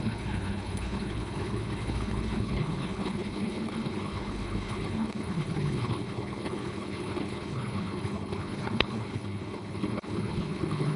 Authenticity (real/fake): fake